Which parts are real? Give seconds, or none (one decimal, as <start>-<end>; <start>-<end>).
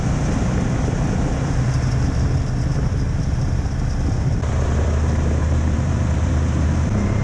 0.0-5.4; 6.3-7.2